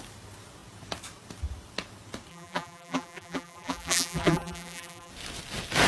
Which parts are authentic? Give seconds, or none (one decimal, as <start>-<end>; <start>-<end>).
0.0-2.3; 5.1-5.9